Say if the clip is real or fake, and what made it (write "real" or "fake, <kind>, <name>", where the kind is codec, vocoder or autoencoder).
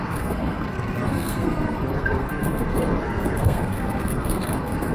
fake, codec, SNAC